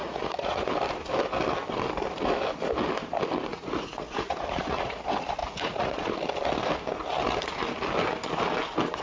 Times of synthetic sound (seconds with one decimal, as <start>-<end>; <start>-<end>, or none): 0.0-0.6; 3.5-5.0; 5.4-6.1